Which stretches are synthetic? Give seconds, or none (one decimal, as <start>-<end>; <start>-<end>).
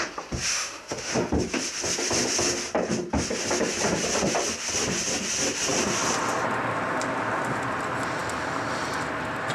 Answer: 0.5-1.1